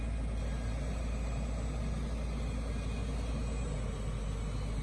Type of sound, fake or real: real